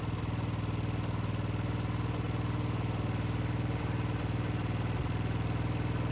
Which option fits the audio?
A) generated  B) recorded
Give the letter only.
B